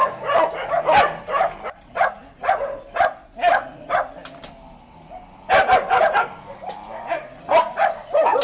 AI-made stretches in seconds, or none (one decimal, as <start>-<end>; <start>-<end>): none